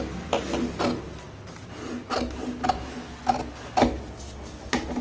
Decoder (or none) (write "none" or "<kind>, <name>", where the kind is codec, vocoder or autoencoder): none